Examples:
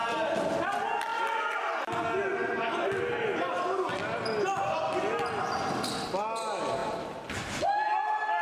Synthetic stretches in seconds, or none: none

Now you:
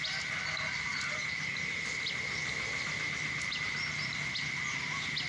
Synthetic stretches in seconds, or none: none

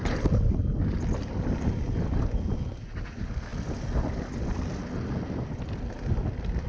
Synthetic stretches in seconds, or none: 0.6-2.2 (vocoder, BigVGAN v2); 3.5-4.8